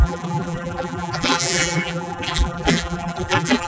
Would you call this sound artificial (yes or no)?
yes